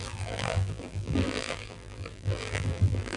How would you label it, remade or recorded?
remade